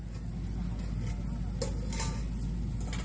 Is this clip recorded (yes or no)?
yes